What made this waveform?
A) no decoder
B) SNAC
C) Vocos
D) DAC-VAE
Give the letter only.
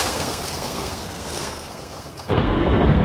B